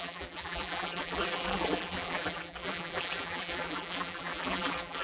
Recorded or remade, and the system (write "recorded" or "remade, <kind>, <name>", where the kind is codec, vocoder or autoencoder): remade, vocoder, BigVGAN v2